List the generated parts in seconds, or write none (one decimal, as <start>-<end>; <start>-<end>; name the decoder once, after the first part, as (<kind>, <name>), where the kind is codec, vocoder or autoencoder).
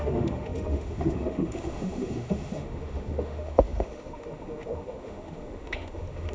0.0-6.3 (autoencoder, DAC-VAE)